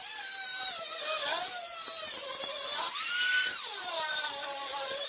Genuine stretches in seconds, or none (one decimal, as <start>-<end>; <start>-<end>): 0.0-5.1